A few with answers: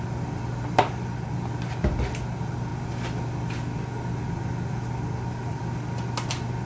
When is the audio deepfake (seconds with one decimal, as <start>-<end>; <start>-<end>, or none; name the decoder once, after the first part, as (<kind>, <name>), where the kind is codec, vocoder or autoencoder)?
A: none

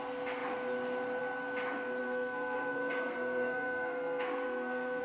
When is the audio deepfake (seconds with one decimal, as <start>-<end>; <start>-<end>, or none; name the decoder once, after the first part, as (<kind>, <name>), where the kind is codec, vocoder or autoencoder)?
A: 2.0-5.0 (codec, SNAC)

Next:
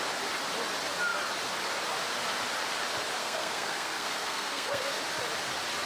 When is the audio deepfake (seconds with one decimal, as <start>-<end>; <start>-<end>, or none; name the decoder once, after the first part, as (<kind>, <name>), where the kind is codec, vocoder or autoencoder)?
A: 3.2-5.0 (codec, SNAC)

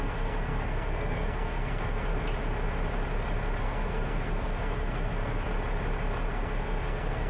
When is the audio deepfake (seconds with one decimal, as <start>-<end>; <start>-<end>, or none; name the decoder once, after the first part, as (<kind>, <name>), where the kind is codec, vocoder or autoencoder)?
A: 0.0-2.1 (codec, SNAC); 3.6-5.5; 6.3-7.3